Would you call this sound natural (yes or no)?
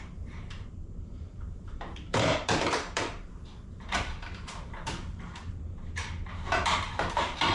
no